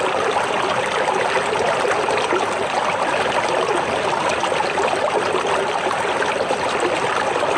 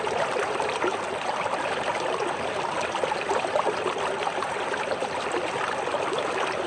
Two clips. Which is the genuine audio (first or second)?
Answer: first